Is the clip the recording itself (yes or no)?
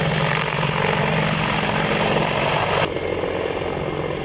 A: yes